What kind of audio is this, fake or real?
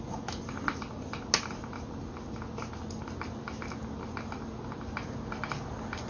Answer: real